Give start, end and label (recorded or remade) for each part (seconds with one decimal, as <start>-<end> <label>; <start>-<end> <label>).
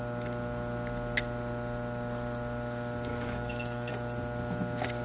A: 0.0-3.1 recorded; 3.1-3.9 remade; 3.9-5.0 recorded